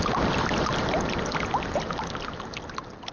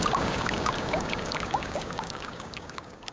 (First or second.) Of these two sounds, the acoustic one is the first